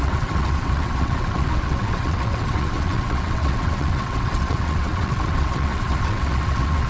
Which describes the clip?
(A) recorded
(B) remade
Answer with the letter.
B